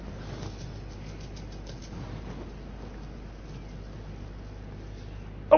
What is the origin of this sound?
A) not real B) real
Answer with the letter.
B